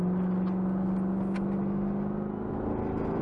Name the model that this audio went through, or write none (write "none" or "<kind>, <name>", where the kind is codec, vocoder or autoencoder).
none